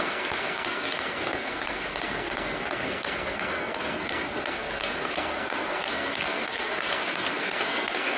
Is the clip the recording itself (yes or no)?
no